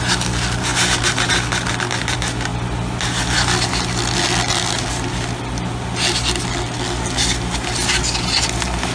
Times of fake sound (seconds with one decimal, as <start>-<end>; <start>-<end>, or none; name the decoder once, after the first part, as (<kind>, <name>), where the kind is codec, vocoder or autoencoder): none